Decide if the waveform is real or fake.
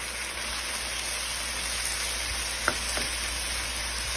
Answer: real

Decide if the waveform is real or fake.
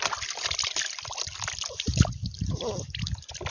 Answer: real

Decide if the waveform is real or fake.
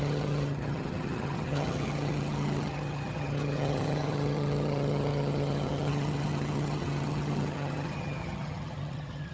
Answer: fake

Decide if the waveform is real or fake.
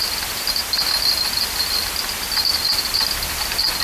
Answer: real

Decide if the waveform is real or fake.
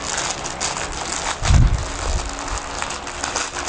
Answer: real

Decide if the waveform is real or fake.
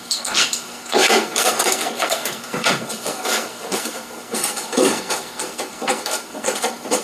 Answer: fake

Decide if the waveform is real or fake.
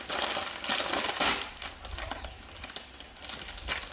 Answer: real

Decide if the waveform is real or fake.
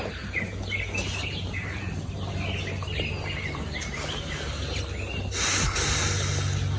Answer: real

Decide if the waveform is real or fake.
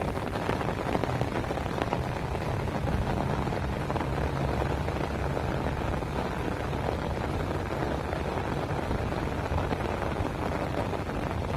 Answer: fake